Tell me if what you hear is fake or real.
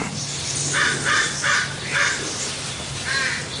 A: real